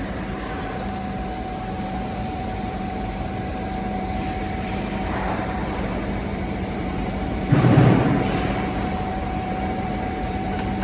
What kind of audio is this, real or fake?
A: fake